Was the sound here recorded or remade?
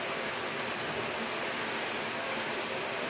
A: recorded